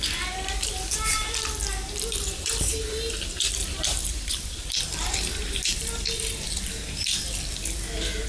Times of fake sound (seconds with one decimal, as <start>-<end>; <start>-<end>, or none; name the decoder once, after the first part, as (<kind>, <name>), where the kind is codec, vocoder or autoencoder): 1.1-5.2 (vocoder, BigVGAN v2); 5.8-6.3